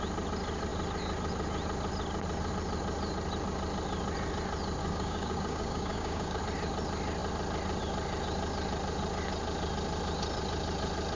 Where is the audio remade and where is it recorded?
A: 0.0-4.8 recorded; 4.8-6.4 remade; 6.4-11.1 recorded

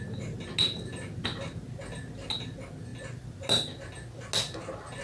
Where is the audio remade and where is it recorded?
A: 0.0-5.0 recorded